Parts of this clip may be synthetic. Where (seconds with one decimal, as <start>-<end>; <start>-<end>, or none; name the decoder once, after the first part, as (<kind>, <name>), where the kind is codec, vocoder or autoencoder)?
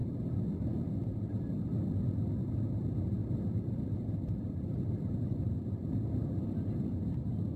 3.2-7.1 (vocoder, BigVGAN v2)